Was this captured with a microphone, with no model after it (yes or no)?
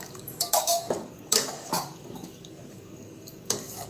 no